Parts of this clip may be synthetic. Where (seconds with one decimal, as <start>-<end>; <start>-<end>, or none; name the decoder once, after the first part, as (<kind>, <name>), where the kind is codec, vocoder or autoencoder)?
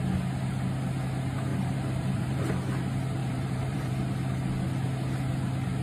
1.5-2.5 (vocoder, BigVGAN v2); 3.2-3.9